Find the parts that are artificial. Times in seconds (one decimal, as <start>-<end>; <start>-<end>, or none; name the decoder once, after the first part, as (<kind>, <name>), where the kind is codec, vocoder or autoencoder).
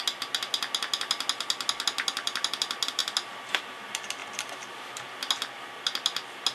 4.2-4.8 (vocoder, BigVGAN v2)